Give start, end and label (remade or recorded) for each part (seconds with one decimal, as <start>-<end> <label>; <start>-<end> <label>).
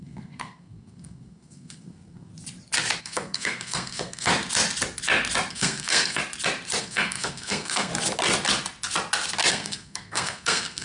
0.0-2.3 remade; 2.3-3.0 recorded; 3.0-4.3 remade; 4.3-5.5 recorded; 5.5-6.2 remade; 6.2-6.8 recorded; 6.8-7.9 remade; 7.9-9.5 recorded; 9.5-10.8 remade